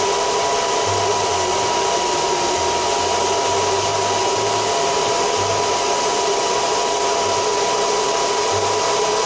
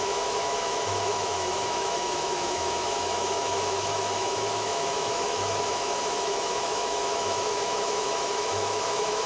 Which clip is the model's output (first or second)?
second